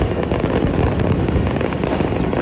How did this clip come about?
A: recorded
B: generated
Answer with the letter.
A